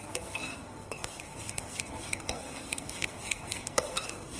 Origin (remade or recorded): remade